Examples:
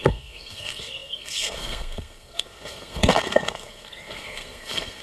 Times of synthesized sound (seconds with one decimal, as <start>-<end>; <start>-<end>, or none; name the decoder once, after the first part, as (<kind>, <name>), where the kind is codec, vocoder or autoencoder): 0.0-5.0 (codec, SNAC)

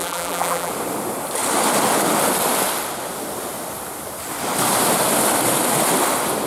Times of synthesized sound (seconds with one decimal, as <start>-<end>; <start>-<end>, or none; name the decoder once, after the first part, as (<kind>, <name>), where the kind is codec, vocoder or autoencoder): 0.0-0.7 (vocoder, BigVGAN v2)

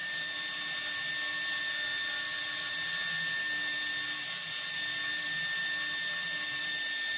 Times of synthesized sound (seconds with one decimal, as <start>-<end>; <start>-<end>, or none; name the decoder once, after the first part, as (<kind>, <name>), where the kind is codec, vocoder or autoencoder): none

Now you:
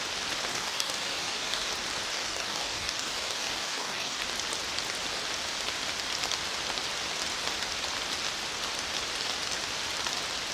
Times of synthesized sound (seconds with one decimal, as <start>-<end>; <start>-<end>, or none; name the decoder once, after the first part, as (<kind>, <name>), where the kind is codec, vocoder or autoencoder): 0.5-1.7 (codec, DAC); 2.1-4.2

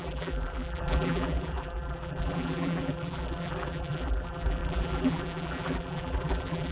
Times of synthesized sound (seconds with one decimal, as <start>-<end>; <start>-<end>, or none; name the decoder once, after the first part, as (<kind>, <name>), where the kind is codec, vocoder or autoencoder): 0.0-6.7 (vocoder, BigVGAN v2)

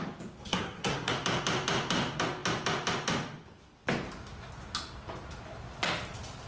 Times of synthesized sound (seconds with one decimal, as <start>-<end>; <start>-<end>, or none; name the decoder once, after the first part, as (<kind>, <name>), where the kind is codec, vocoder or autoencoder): 0.4-1.1 (codec, SNAC)

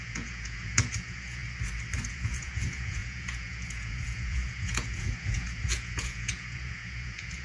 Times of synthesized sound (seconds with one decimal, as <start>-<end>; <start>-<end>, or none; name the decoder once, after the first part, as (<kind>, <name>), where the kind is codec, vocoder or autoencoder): 0.0-1.4 (vocoder, Vocos); 2.1-7.4

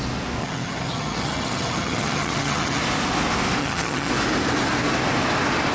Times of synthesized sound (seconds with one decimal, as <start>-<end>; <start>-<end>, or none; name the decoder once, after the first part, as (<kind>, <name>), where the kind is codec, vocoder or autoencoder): 0.4-2.8 (vocoder, HiFi-GAN); 3.6-4.1